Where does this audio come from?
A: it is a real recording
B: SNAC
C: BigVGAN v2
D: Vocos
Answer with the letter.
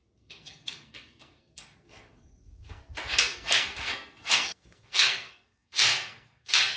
B